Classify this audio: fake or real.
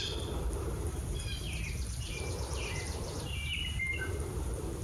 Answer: fake